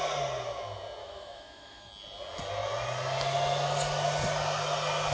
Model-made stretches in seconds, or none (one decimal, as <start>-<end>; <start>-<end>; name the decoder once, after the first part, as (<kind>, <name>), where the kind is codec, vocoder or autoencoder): 1.0-1.9 (autoencoder, DAC-VAE)